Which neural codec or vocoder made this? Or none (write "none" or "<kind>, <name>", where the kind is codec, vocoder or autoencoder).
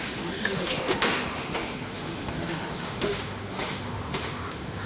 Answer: autoencoder, DAC-VAE